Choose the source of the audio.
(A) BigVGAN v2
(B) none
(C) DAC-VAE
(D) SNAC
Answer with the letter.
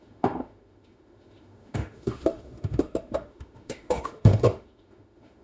C